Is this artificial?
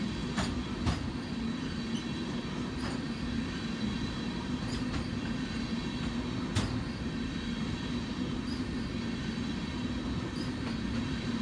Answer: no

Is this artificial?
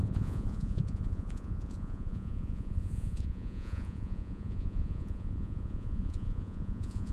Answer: yes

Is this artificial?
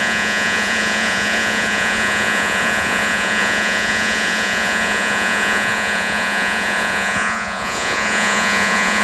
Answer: yes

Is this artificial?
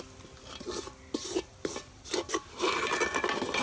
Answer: no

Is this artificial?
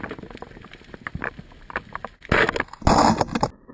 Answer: no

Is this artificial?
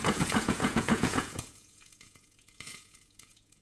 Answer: yes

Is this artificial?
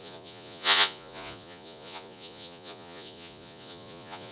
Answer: yes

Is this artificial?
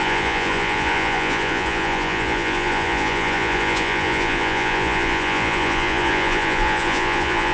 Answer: yes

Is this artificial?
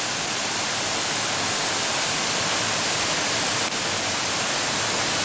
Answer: no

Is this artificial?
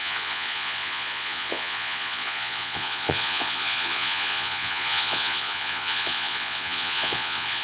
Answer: yes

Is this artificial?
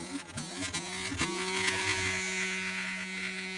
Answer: yes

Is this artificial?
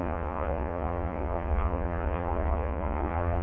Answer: yes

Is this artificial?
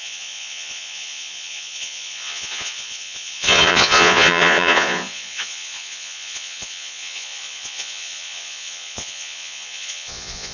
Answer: yes